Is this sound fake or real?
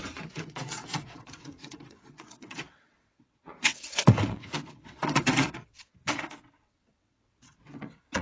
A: fake